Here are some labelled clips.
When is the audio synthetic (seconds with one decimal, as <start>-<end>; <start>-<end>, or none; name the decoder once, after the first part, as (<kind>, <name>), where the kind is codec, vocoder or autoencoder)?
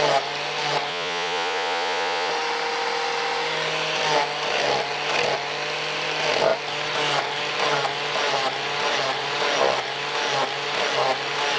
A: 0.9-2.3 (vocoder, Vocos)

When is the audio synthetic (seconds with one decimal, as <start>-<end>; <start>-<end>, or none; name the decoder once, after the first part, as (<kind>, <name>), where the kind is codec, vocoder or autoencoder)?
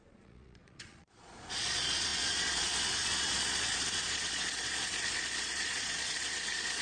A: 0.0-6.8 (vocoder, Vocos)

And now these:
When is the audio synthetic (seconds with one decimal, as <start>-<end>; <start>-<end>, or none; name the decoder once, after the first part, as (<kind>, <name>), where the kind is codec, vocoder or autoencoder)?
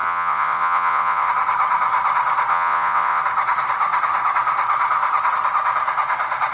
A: 0.0-1.3 (vocoder, Vocos); 2.5-3.2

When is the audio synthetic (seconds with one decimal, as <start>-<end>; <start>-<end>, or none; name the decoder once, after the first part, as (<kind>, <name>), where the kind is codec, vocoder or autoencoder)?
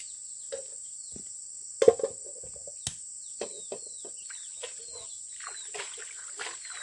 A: none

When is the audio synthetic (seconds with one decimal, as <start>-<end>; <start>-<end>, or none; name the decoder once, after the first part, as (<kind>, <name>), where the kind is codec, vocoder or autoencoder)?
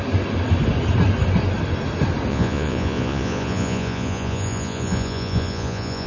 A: 2.3-6.1 (vocoder, Vocos)